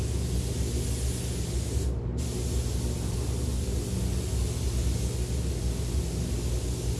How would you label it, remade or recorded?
recorded